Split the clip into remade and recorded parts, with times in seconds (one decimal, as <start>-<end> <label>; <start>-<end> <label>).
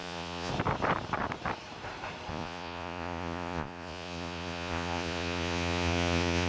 0.0-0.5 remade; 0.5-2.3 recorded; 2.3-6.5 remade